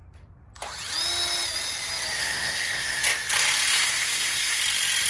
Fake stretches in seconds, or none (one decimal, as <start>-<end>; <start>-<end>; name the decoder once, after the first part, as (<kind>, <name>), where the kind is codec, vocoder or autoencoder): 2.2-3.0 (codec, SNAC); 3.7-4.6